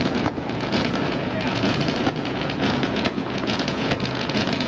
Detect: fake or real fake